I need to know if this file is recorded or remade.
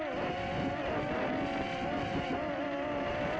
recorded